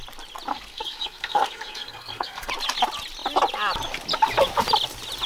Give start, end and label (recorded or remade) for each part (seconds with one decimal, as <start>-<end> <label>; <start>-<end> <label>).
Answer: 0.0-0.5 recorded; 0.5-2.5 remade; 2.5-5.3 recorded